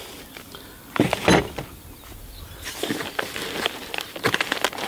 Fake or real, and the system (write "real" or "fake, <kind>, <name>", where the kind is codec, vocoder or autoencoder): real